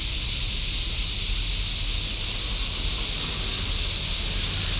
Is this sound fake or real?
real